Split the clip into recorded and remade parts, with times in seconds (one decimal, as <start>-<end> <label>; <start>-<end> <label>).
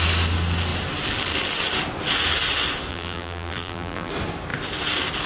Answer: 0.0-2.9 recorded; 2.9-4.1 remade; 4.1-5.3 recorded